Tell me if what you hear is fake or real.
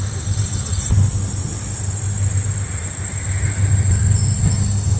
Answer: real